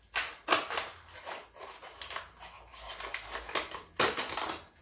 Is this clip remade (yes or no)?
no